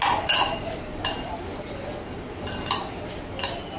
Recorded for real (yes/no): yes